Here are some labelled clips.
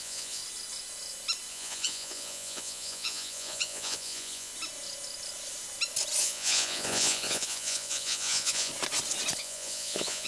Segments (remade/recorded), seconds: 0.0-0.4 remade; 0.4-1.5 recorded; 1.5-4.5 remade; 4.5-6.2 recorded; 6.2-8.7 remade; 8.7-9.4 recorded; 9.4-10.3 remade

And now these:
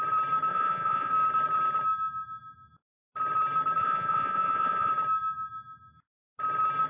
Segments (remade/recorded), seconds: 0.0-0.5 recorded; 0.5-1.1 remade; 1.1-3.8 recorded; 3.8-4.9 remade; 4.9-6.9 recorded

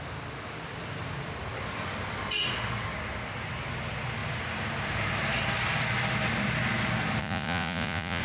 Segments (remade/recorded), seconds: 0.0-7.2 recorded; 7.2-8.2 remade

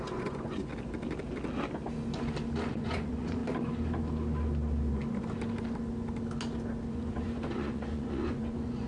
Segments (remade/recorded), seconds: 0.0-0.7 remade; 0.7-2.7 recorded; 2.7-3.4 remade; 3.4-6.9 recorded; 6.9-8.9 remade